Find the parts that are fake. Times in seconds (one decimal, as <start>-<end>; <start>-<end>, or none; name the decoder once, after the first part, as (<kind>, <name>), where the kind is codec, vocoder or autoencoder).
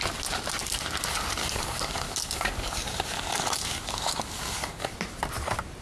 1.4-4.9 (codec, DAC)